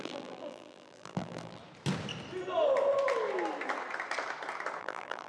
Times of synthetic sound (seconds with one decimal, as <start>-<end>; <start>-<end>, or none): 0.0-1.6; 4.8-5.3